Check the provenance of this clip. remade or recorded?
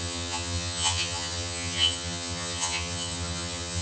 remade